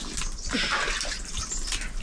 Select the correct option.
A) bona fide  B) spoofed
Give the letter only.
A